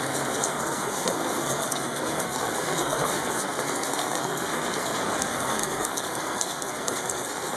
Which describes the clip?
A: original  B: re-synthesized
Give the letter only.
B